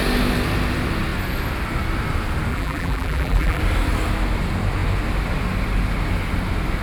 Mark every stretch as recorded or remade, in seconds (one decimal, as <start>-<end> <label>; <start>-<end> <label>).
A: 0.0-2.5 recorded; 2.5-3.6 remade; 3.6-6.8 recorded